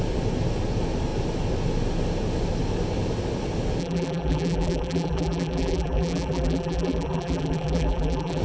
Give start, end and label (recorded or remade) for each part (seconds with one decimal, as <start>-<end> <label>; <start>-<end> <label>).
0.0-3.8 recorded; 3.8-8.4 remade